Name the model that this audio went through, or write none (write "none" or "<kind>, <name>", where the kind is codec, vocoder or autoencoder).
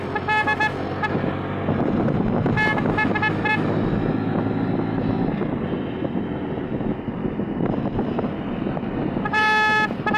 none